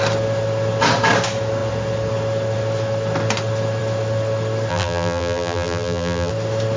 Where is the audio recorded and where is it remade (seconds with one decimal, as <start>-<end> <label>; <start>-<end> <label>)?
0.0-4.7 recorded; 4.7-6.3 remade; 6.3-6.8 recorded